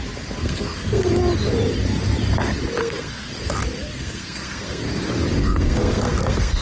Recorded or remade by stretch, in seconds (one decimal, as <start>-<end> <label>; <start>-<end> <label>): 0.0-0.4 recorded; 0.4-1.1 remade; 1.1-2.8 recorded; 2.8-3.3 remade; 3.3-3.8 recorded; 3.8-4.8 remade; 4.8-5.4 recorded; 5.4-6.6 remade